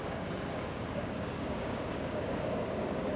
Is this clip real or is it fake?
fake